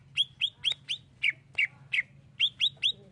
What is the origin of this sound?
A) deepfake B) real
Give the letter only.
B